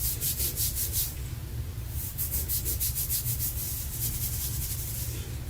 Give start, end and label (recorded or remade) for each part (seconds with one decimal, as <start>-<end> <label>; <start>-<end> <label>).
0.0-5.5 recorded